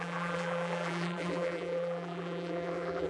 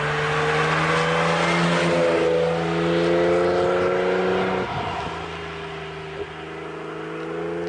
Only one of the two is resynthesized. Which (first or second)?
first